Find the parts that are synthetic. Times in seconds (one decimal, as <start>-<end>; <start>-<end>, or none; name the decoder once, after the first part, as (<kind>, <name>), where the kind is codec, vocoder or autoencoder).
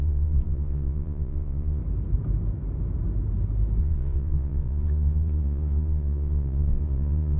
0.0-1.8 (vocoder, Vocos); 3.8-7.4